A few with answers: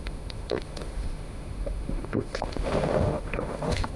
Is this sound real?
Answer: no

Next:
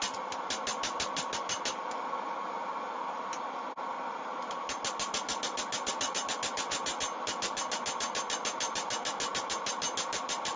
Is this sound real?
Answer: yes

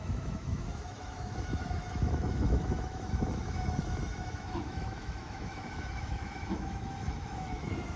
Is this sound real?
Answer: no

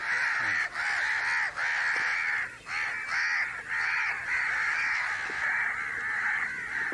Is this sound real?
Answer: yes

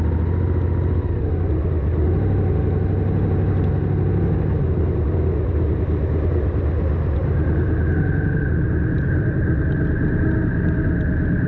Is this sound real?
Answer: yes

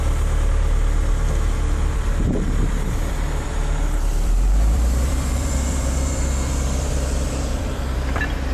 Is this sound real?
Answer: no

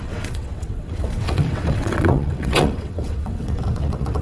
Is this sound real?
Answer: no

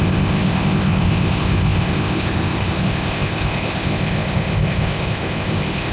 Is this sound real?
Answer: no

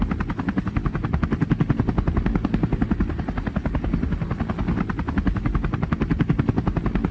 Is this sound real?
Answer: yes